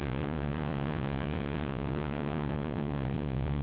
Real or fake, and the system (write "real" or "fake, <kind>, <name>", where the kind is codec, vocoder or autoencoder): fake, vocoder, WaveNeXt